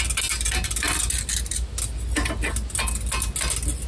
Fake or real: real